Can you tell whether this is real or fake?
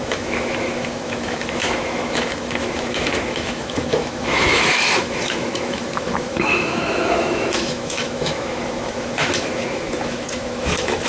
fake